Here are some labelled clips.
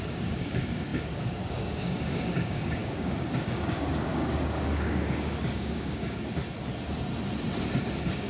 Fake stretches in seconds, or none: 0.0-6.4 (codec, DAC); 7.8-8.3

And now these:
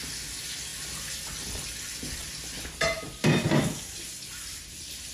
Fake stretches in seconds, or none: none

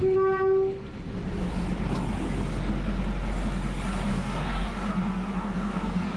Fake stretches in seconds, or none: 4.1-6.2 (codec, DAC)

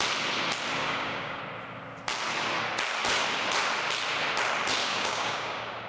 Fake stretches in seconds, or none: 0.8-1.4 (codec, DAC); 4.8-5.9

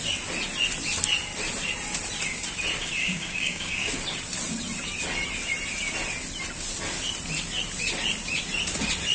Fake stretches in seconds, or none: 3.0-3.9 (codec, DAC)

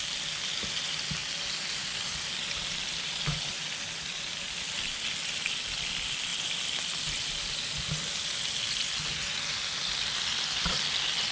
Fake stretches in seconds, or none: none

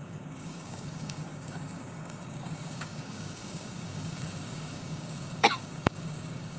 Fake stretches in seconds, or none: 0.0-6.6 (codec, DAC)